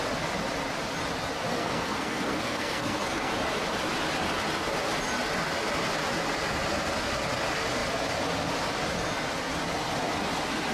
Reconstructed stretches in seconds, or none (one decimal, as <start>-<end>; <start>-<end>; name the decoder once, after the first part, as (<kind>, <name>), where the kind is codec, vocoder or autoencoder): 1.5-3.3 (codec, SNAC)